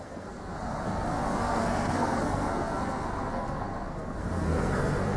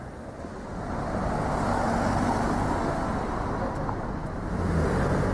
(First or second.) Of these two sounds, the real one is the second